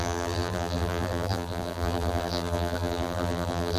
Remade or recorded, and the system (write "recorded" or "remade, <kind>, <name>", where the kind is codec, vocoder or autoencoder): remade, vocoder, BigVGAN v2